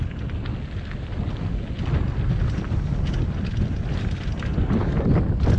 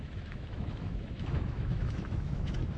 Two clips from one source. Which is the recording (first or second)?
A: first